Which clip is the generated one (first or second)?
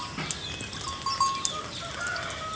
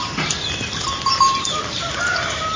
second